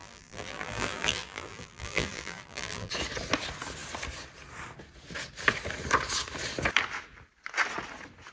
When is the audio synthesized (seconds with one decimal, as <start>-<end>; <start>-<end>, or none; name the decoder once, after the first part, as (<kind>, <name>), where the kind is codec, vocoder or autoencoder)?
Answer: 0.0-2.9 (vocoder, BigVGAN v2)